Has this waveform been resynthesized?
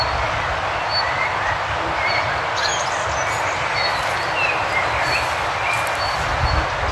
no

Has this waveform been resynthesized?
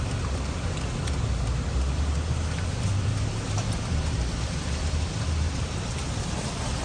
no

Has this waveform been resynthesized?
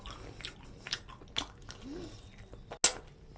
no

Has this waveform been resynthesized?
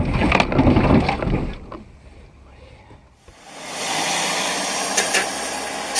no